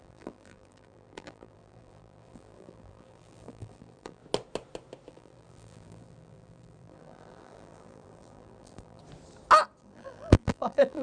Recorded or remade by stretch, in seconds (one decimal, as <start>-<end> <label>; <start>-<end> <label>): 0.0-4.2 remade; 4.2-5.1 recorded; 5.1-9.0 remade; 9.0-9.8 recorded; 9.8-11.0 remade